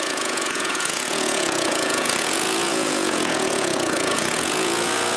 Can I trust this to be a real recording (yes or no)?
no